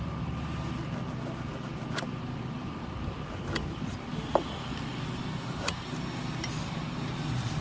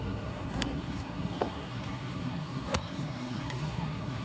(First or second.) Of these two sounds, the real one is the first